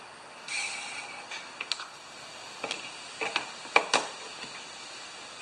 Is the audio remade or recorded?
recorded